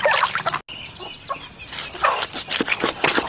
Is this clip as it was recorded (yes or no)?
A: yes